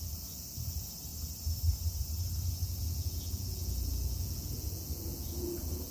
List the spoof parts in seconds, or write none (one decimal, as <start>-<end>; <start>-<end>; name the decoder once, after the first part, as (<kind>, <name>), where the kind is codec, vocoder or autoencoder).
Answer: 0.0-1.1 (vocoder, Vocos); 2.5-5.9